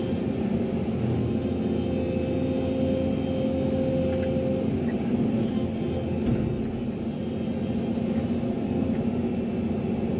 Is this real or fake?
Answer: real